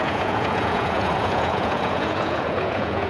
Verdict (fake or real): fake